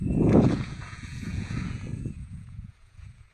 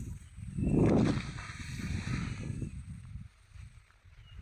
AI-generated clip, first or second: first